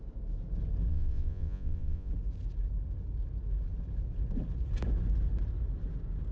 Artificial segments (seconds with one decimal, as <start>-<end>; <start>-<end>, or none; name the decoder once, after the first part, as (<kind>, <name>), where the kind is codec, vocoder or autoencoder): 0.9-2.1 (vocoder, Vocos)